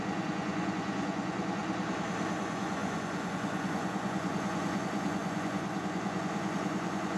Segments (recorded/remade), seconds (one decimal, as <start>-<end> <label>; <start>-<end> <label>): 0.0-1.6 remade; 1.6-2.4 recorded; 2.4-7.2 remade